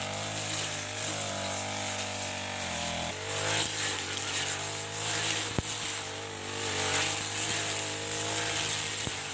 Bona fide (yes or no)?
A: yes